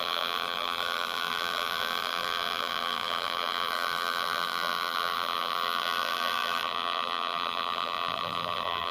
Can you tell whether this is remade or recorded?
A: remade